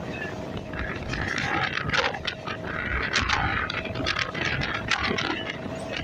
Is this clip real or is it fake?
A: real